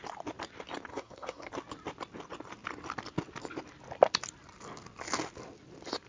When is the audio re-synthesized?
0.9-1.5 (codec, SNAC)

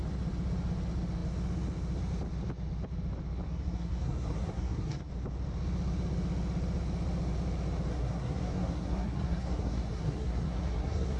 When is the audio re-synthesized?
3.5-5.1 (codec, SNAC); 7.9-11.2